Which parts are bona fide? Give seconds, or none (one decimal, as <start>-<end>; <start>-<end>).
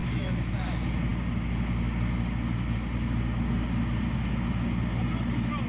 0.5-5.7